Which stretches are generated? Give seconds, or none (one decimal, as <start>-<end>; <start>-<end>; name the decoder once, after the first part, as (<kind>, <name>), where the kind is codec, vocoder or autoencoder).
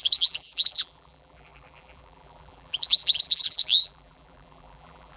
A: 0.0-5.2 (vocoder, BigVGAN v2)